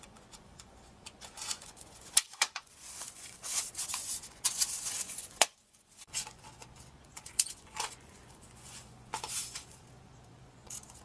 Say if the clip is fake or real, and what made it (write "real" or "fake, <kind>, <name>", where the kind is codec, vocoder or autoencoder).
fake, vocoder, Vocos